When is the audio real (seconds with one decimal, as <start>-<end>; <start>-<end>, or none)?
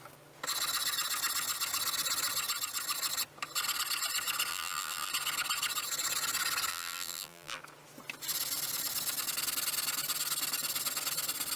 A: 0.0-4.5; 5.1-6.7; 7.6-11.6